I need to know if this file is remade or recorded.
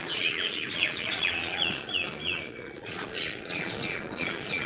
remade